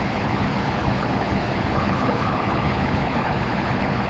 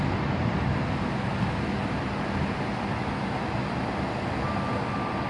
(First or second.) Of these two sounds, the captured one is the second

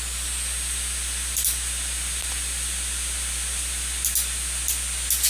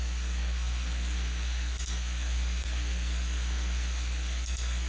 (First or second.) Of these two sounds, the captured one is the first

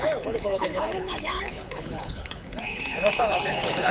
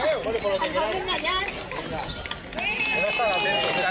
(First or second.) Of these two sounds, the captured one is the second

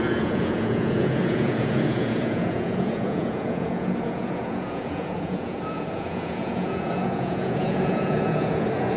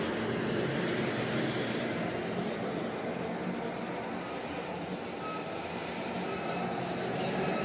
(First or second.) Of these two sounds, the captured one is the second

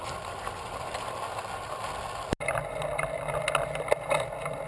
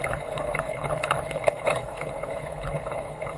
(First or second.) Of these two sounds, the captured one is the first